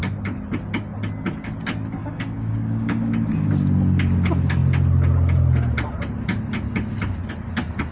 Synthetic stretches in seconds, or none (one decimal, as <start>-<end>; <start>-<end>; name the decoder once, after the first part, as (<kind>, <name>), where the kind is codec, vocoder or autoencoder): 2.0-3.5 (codec, DAC)